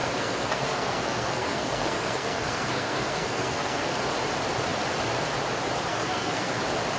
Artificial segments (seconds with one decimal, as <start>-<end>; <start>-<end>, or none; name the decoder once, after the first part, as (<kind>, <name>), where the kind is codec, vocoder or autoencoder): 0.0-4.0 (codec, SNAC); 5.9-6.6